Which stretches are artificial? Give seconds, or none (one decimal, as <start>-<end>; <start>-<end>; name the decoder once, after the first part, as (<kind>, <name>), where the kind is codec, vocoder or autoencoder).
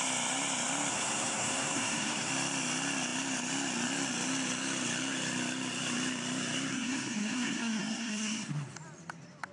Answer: 0.9-2.3 (codec, SNAC); 6.7-8.5